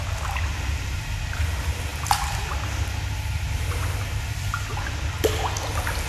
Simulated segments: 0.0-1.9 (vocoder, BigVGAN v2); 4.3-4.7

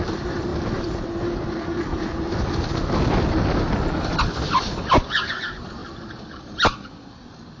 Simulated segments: 1.9-2.7 (vocoder, BigVGAN v2)

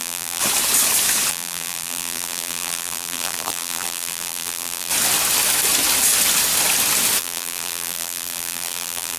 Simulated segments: 0.0-0.4 (vocoder, BigVGAN v2); 1.3-4.9; 7.2-9.2

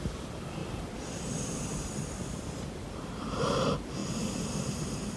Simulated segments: 0.6-3.6 (vocoder, BigVGAN v2)

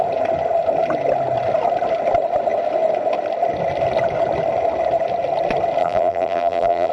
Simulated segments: 5.8-6.9 (vocoder, BigVGAN v2)

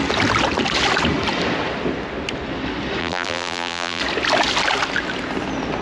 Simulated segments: 3.0-4.0 (vocoder, BigVGAN v2)

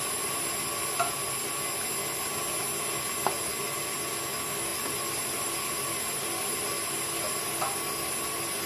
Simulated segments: none

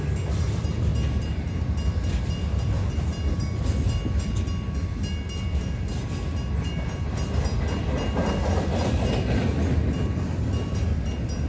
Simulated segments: none